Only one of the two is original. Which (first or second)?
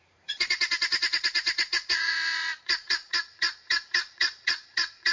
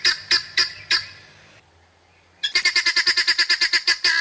second